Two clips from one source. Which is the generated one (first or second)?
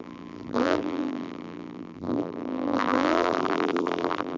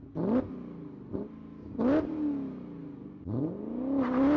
first